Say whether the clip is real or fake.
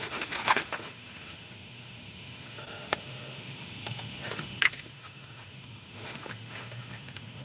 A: fake